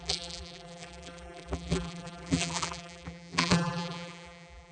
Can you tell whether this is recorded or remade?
remade